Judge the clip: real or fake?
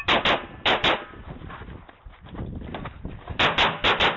real